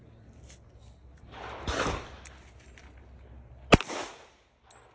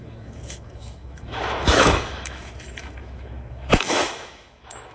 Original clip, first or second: first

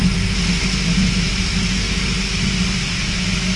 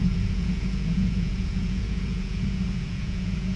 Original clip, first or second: first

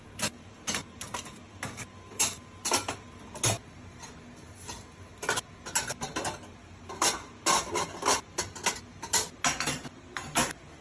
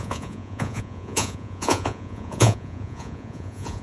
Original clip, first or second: first